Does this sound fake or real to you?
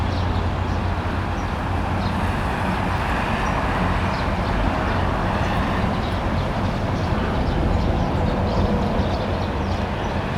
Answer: real